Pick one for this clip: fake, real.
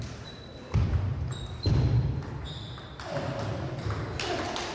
fake